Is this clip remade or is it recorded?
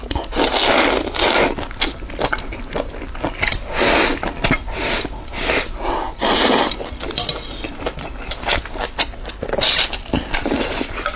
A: recorded